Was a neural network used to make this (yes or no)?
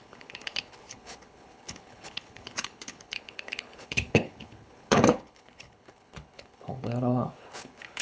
yes